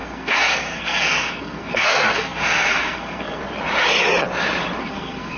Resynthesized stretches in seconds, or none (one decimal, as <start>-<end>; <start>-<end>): 0.0-3.4; 4.8-5.4